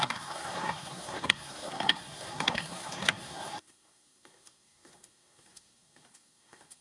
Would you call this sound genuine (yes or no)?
no